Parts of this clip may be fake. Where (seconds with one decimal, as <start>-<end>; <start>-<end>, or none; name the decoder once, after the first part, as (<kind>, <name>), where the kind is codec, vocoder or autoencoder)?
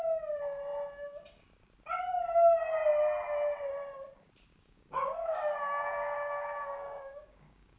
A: 4.5-7.8 (codec, DAC)